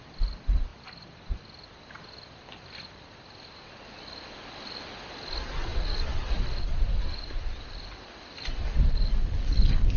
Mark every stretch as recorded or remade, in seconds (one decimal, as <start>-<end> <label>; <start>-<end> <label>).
0.0-10.0 recorded